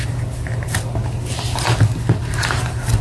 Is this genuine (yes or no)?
yes